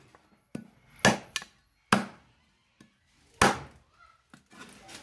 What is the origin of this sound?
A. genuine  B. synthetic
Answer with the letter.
A